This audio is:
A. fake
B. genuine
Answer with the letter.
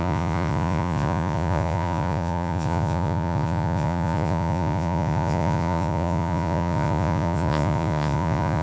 A